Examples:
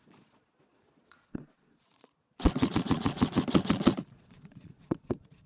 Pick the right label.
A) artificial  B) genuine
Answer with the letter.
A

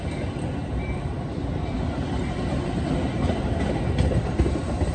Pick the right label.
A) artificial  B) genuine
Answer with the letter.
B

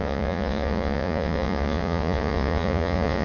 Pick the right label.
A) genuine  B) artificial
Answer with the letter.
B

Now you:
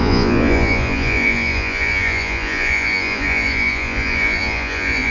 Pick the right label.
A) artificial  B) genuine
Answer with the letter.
A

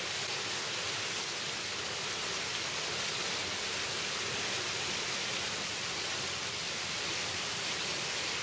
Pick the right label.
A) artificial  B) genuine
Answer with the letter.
B